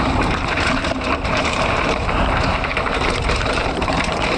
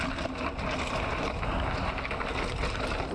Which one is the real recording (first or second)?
second